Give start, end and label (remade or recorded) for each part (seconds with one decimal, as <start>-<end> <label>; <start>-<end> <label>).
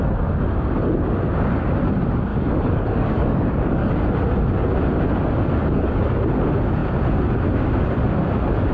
0.0-2.3 recorded; 2.3-3.9 remade; 3.9-5.6 recorded; 5.6-6.2 remade; 6.2-8.7 recorded